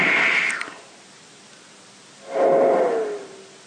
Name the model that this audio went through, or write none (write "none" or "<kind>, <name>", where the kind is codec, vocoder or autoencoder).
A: none